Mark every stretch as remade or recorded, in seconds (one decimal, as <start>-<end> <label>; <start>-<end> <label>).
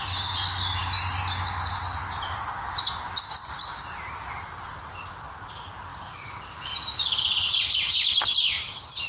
0.0-9.1 recorded